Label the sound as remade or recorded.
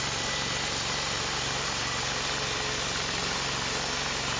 recorded